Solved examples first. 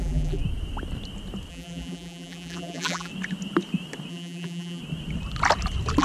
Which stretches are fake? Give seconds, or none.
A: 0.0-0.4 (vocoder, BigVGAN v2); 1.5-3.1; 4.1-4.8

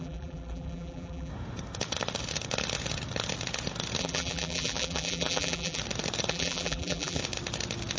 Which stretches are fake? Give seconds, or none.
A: 0.0-1.3 (vocoder, BigVGAN v2); 4.0-5.8; 6.3-7.2